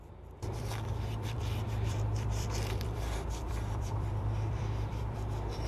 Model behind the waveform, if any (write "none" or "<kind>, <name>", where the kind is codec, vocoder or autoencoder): vocoder, BigVGAN v2